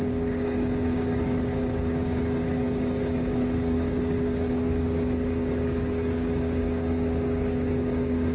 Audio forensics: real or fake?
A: fake